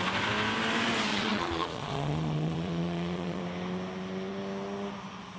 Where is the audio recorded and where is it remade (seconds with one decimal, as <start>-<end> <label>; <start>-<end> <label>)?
0.0-1.1 recorded; 1.1-3.4 remade; 3.4-5.4 recorded